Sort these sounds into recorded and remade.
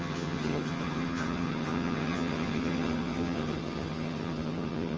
remade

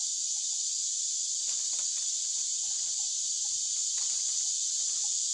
recorded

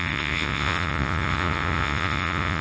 remade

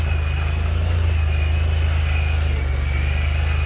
recorded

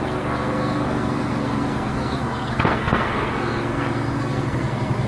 remade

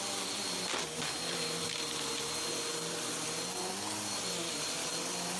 recorded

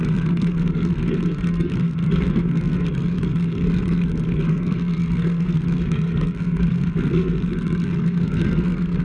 remade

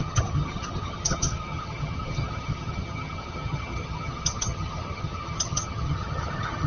remade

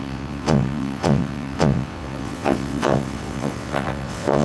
remade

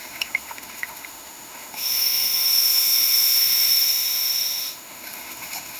remade